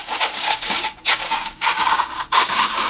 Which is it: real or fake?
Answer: fake